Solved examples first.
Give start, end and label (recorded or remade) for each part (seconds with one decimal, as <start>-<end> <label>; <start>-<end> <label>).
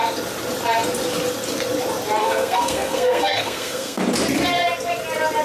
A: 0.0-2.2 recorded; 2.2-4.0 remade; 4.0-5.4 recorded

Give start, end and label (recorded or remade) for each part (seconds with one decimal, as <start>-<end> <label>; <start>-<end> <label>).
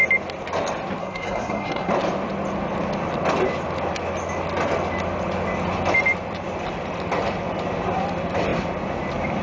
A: 0.0-1.0 recorded; 1.0-1.9 remade; 1.9-9.4 recorded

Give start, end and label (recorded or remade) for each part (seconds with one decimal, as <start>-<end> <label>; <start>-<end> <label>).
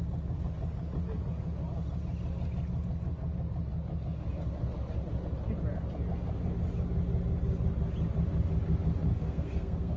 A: 0.0-9.1 recorded; 9.1-10.0 remade